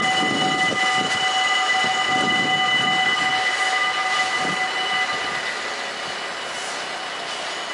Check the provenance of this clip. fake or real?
real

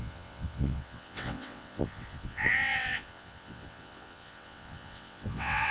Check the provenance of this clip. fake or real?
fake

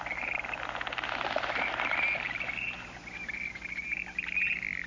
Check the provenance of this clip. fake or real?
real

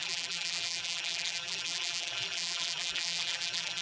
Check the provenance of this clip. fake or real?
fake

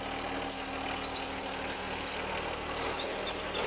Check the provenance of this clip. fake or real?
real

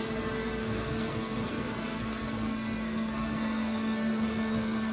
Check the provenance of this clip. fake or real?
fake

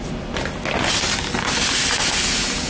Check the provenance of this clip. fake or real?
real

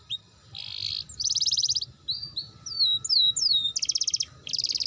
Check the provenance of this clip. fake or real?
real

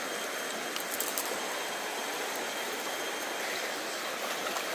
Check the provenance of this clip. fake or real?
real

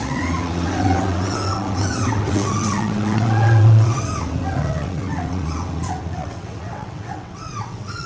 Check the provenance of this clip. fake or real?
fake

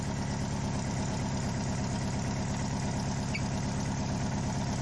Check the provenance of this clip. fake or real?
real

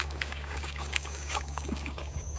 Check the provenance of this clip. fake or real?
fake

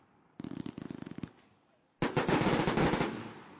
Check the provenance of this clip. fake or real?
real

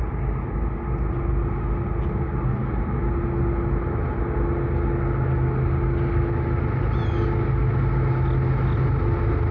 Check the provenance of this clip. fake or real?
real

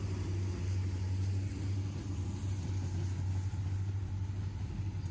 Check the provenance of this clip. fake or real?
real